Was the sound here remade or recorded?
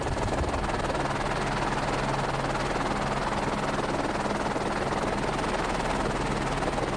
recorded